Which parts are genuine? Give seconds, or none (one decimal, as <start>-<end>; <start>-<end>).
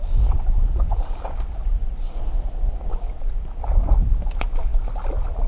0.0-5.5